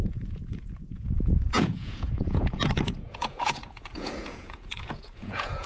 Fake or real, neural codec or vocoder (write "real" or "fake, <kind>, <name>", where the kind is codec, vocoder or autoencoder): fake, vocoder, Vocos